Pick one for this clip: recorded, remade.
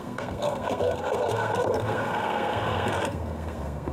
remade